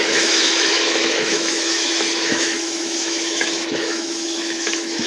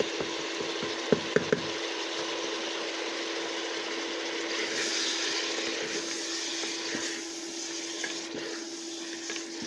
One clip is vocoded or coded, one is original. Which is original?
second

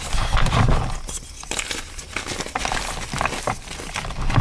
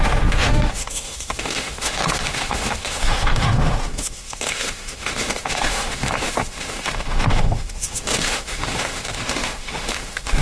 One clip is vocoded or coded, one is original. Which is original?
first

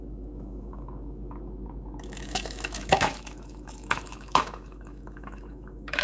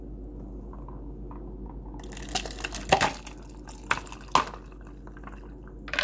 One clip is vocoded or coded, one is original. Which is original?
second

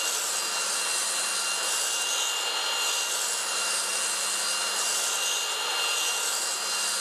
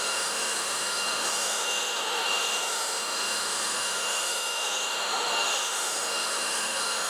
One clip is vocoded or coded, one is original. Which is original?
first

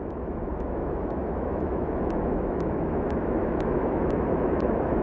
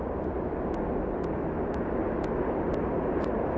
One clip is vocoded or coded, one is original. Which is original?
second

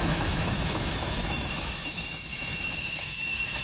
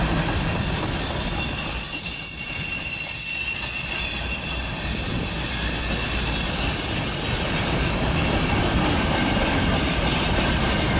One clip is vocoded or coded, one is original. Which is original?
second